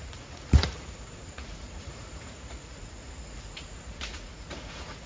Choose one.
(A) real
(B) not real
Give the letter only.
B